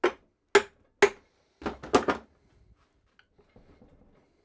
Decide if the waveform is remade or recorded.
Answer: recorded